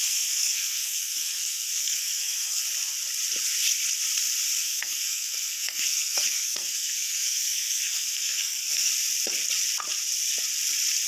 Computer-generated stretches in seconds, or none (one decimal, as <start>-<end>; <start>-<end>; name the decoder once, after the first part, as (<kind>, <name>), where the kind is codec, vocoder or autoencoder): 0.0-2.6 (codec, SNAC); 4.6-8.9